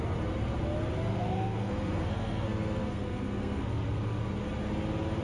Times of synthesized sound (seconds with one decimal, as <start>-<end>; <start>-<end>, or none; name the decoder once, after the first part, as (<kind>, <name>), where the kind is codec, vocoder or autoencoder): 1.1-4.2 (codec, SNAC)